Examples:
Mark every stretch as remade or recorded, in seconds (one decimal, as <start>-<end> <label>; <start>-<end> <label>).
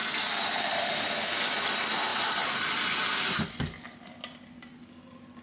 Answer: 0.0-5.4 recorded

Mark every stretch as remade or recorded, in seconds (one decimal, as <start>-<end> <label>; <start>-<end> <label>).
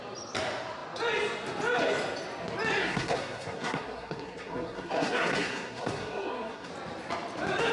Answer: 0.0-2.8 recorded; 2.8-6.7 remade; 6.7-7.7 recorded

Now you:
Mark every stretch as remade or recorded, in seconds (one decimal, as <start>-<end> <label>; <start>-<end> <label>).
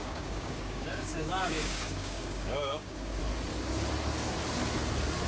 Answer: 0.0-3.2 remade; 3.2-5.3 recorded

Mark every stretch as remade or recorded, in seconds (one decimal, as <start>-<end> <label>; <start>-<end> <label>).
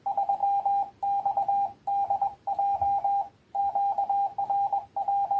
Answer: 0.0-5.4 recorded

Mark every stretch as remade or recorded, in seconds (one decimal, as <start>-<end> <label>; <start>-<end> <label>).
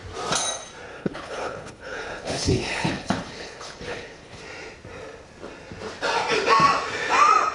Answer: 0.0-0.9 recorded; 0.9-4.4 remade; 4.4-7.5 recorded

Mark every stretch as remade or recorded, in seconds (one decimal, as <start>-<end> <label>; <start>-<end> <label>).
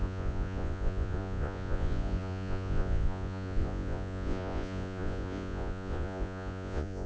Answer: 0.0-7.1 remade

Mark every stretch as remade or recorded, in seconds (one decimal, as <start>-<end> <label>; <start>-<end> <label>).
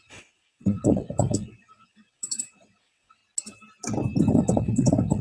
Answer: 0.0-3.2 remade; 3.2-4.3 recorded; 4.3-5.2 remade